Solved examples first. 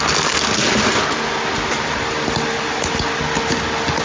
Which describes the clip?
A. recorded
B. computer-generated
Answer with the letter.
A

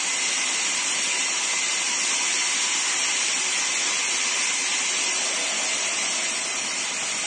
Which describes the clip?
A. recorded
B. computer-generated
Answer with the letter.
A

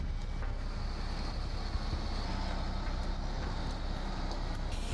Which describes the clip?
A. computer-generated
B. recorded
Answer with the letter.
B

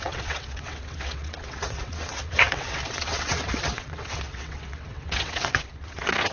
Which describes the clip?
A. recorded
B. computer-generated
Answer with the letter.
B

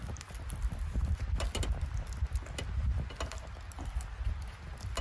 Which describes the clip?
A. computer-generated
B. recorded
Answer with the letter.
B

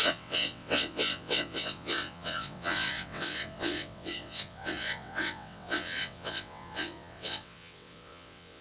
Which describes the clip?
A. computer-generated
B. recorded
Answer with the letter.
A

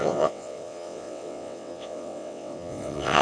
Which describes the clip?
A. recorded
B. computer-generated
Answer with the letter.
B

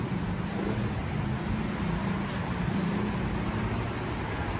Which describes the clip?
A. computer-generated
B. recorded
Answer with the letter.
B